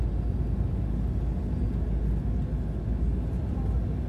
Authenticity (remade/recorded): recorded